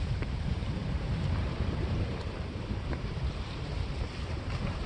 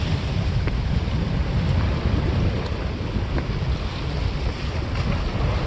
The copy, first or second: first